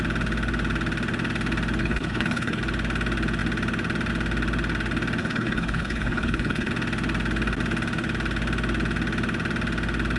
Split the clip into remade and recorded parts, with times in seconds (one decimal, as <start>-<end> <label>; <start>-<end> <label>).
0.0-1.8 recorded; 1.8-2.6 remade; 2.6-5.2 recorded; 5.2-6.7 remade; 6.7-10.2 recorded